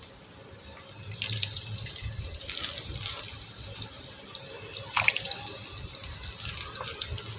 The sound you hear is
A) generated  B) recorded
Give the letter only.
A